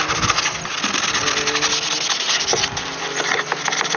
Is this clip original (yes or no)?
yes